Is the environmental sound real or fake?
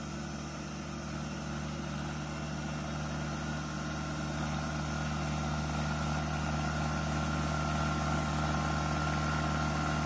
real